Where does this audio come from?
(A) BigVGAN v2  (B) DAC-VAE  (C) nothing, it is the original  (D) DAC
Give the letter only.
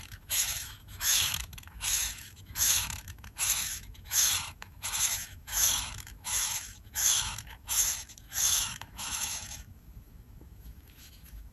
B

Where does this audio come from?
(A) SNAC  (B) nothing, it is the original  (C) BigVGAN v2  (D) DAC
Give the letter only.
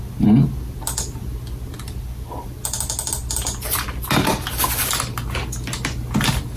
B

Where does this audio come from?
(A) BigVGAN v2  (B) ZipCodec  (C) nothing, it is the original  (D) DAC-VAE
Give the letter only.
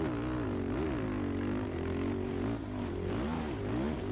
C